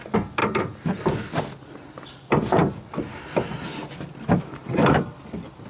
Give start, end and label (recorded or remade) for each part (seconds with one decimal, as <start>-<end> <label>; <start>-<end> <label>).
0.0-0.4 recorded; 0.4-1.4 remade; 1.4-4.6 recorded; 4.6-5.7 remade